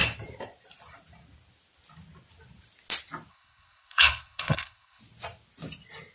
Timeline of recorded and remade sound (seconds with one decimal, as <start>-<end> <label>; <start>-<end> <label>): 0.0-3.3 recorded; 3.3-5.0 remade; 5.0-6.1 recorded